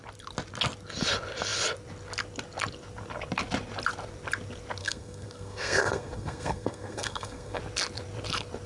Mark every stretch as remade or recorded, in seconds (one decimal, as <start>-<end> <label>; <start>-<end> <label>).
0.0-4.8 recorded; 4.8-7.6 remade; 7.6-8.7 recorded